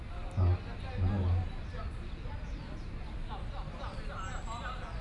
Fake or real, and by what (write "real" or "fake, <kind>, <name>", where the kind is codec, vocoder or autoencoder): real